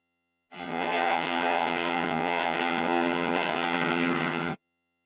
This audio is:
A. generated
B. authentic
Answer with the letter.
A